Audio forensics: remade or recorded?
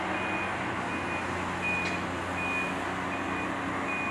recorded